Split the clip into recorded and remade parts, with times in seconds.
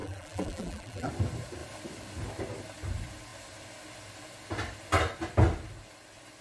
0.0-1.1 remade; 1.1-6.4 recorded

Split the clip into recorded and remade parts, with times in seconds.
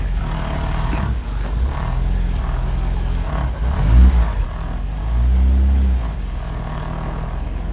0.0-5.0 remade; 5.0-6.2 recorded; 6.2-7.7 remade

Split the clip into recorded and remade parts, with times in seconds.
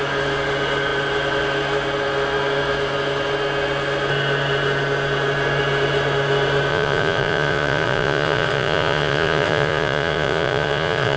0.0-6.7 recorded; 6.7-11.2 remade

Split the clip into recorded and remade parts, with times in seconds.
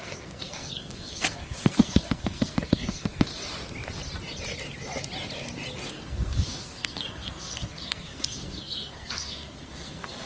0.0-3.3 remade; 3.3-5.9 recorded; 5.9-10.3 remade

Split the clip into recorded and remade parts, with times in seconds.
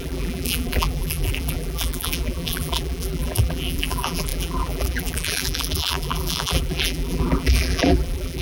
0.0-8.4 remade